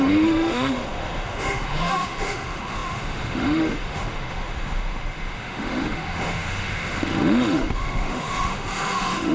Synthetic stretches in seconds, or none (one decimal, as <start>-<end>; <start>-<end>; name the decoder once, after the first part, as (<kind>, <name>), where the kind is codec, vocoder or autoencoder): 0.0-9.3 (autoencoder, DAC-VAE)